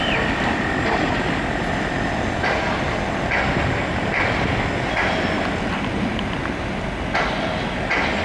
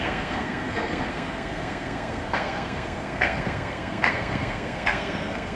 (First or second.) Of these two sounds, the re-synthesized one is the second